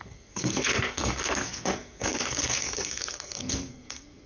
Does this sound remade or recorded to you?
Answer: remade